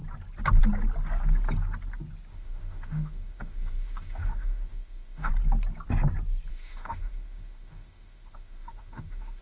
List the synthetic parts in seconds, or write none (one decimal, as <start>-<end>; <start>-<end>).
2.3-5.3; 6.5-9.4